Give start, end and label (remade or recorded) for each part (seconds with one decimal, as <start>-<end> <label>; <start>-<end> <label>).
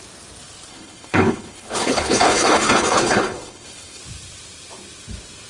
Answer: 0.0-0.7 recorded; 0.7-4.0 remade; 4.0-5.5 recorded